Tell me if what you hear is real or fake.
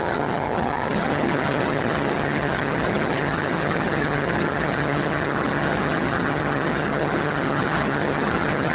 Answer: fake